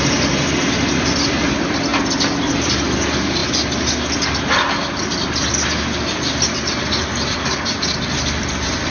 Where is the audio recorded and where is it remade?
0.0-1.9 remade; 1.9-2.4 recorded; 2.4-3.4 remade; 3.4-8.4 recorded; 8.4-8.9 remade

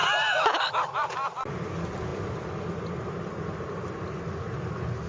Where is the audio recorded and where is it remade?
0.0-5.1 recorded